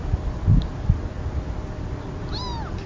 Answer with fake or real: real